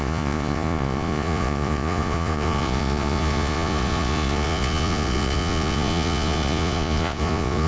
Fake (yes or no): yes